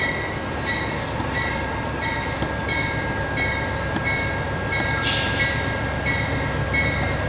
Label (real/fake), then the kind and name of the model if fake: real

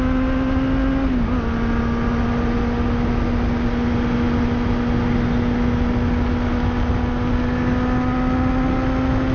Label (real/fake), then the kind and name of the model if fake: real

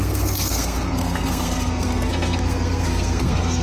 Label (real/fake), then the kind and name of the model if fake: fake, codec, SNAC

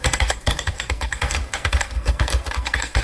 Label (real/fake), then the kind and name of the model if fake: fake, codec, SNAC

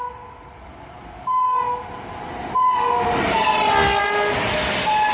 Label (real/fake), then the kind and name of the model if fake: real